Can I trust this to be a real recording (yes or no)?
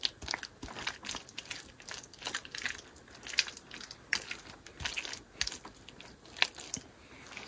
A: yes